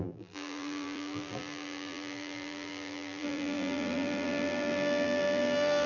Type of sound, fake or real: fake